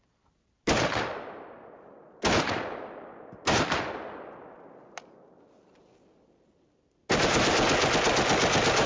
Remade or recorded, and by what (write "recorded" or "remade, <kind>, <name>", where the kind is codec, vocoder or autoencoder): recorded